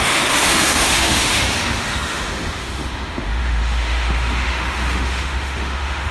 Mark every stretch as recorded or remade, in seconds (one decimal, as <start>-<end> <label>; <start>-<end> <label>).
0.0-6.1 remade